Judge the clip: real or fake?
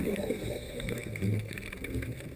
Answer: fake